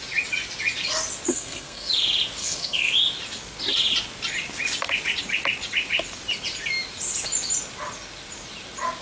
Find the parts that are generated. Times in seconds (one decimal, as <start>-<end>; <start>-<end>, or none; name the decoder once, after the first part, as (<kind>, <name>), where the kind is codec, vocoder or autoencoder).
1.3-1.9 (codec, SNAC); 2.4-2.9